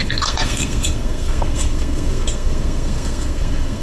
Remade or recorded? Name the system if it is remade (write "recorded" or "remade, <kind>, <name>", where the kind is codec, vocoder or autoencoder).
remade, codec, SNAC